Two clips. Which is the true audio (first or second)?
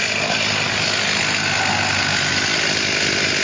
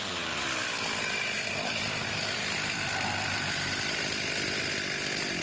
first